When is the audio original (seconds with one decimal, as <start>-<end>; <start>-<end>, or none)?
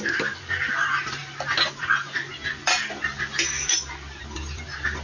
0.0-5.0